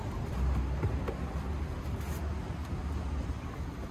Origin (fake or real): real